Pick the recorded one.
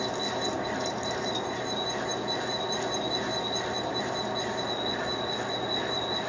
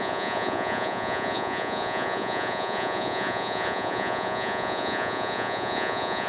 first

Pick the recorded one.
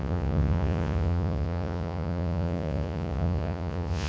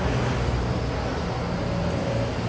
second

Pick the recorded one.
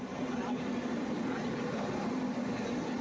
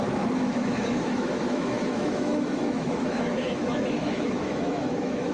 first